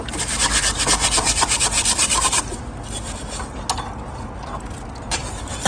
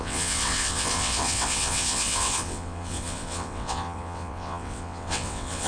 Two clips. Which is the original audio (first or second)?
first